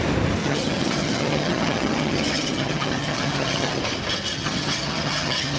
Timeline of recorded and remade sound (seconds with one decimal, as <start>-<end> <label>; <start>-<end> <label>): 0.0-0.4 recorded; 0.4-3.8 remade; 3.8-4.3 recorded; 4.3-5.6 remade

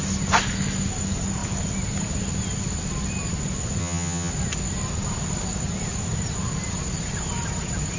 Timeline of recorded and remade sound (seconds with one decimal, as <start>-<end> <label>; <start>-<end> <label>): 0.0-3.8 recorded; 3.8-4.3 remade; 4.3-8.0 recorded

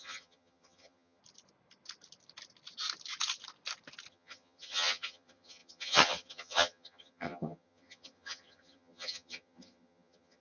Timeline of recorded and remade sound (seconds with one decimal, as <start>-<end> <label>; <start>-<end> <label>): 0.0-1.2 remade; 1.2-4.1 recorded; 4.1-10.4 remade

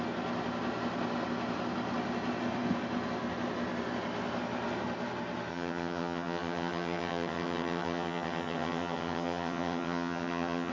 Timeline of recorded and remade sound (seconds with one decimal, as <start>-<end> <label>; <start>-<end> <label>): 0.0-5.5 recorded; 5.5-10.7 remade

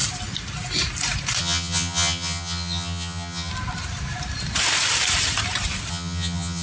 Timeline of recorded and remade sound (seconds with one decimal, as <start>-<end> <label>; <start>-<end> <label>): 0.0-1.4 recorded; 1.4-3.5 remade; 3.5-5.9 recorded; 5.9-6.6 remade

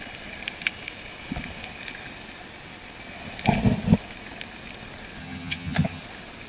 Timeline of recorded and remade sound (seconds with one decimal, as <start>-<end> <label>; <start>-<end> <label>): 0.0-5.2 recorded; 5.2-6.0 remade; 6.0-6.5 recorded

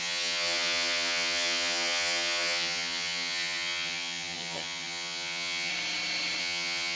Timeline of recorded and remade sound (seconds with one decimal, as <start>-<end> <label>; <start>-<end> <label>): 0.0-5.7 remade; 5.7-6.4 recorded; 6.4-7.0 remade